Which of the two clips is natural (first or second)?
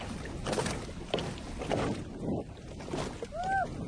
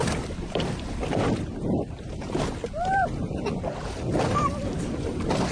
first